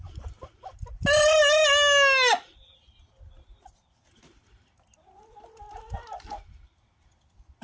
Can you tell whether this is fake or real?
real